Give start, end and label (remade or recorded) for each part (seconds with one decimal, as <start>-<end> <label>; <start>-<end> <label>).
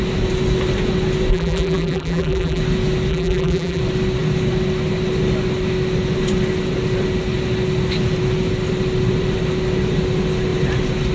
0.0-1.3 recorded; 1.3-2.6 remade; 2.6-3.1 recorded; 3.1-3.8 remade; 3.8-11.1 recorded